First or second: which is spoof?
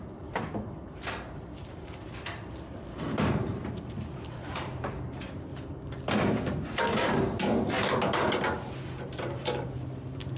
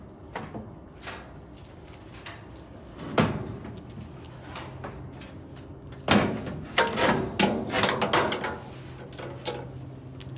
first